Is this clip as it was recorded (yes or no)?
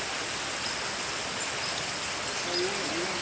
yes